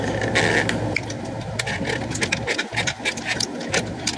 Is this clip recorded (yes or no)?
yes